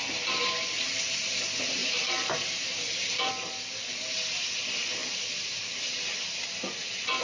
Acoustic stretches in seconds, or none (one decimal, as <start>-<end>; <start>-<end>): 0.0-1.8; 3.3-5.0; 5.8-7.2